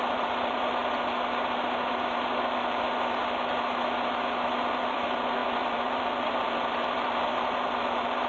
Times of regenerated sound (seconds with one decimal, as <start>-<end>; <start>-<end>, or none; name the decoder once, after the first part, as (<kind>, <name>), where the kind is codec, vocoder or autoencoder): 0.0-0.8 (vocoder, BigVGAN v2); 4.8-8.3